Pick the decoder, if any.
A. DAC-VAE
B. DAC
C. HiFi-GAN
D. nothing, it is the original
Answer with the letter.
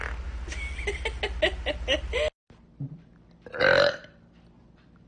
D